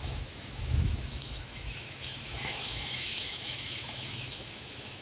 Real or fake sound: fake